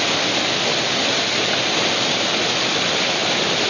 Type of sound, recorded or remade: recorded